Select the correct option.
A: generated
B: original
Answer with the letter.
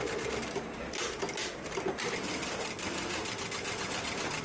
B